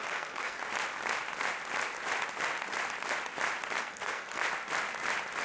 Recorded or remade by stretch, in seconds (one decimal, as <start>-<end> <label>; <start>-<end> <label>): 0.0-0.6 remade; 0.6-3.8 recorded; 3.8-4.4 remade; 4.4-5.4 recorded